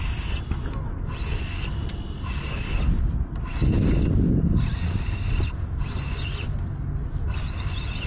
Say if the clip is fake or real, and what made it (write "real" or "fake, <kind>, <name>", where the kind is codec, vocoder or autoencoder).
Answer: real